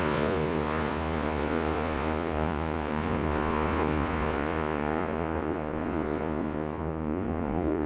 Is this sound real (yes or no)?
no